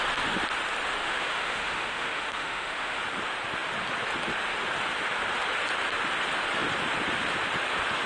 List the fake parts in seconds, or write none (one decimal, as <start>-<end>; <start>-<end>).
1.0-3.0